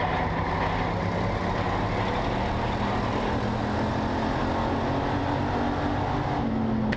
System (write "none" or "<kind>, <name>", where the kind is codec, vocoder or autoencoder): none